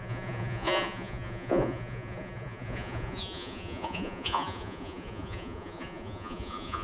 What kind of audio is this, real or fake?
fake